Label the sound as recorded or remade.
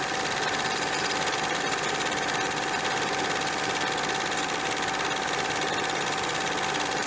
recorded